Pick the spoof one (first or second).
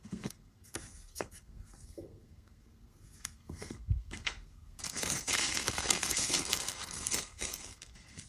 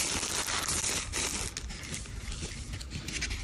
first